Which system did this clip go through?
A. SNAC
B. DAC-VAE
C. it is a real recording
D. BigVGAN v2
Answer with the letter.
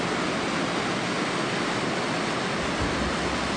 C